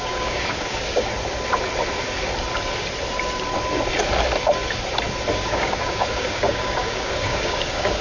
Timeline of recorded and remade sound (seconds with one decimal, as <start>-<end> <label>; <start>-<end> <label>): 0.0-1.1 remade; 1.1-5.3 recorded; 5.3-8.0 remade